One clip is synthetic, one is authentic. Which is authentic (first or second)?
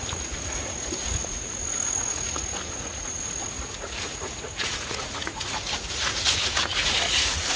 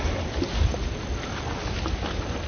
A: second